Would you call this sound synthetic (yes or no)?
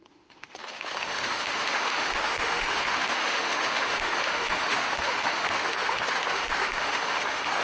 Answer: yes